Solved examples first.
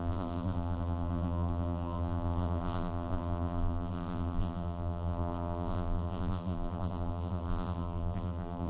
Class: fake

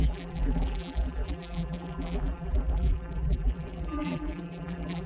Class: fake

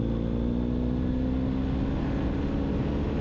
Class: real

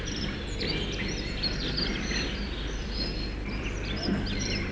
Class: fake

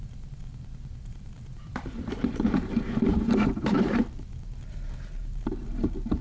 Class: fake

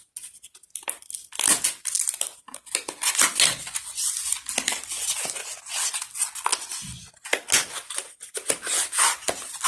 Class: real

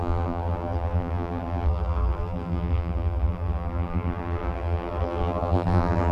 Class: fake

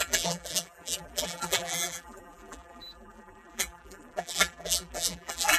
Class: fake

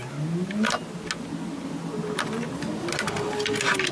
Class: real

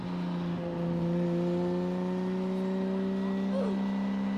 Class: real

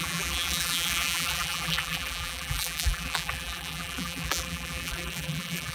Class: fake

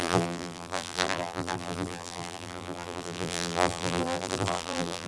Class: fake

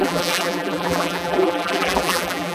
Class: fake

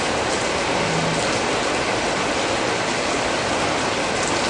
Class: real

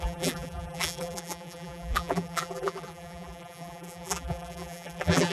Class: fake